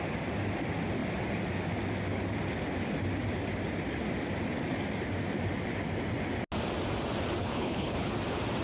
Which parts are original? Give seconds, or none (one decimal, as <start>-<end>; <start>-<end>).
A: 0.0-7.4; 8.1-8.6